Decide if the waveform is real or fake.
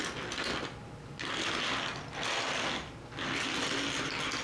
real